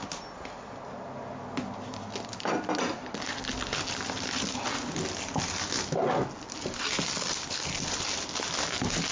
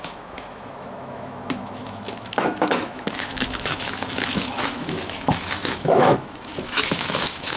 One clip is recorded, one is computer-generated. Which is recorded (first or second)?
first